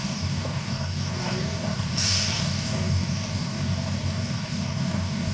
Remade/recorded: remade